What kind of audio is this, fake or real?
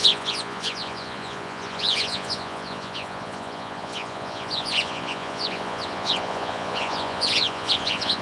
fake